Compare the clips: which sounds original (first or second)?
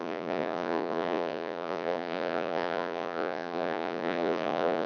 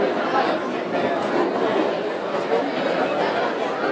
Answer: second